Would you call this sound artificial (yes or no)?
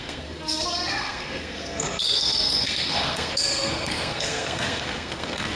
yes